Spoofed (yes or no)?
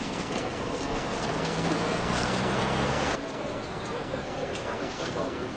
yes